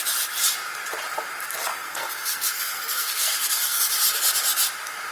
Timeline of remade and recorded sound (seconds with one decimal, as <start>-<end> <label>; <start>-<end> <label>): 0.0-1.7 recorded; 1.7-3.8 remade; 3.8-5.1 recorded